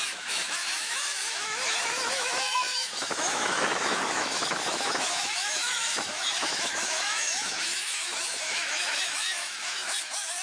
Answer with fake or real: fake